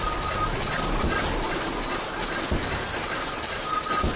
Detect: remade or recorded recorded